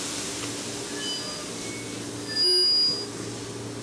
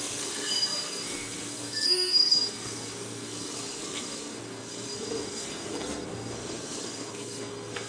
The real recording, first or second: first